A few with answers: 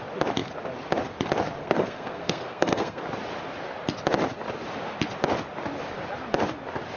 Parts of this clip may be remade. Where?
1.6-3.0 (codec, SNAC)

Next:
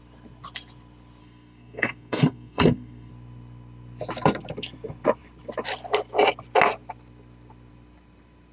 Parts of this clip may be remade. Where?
1.2-3.1 (codec, SNAC)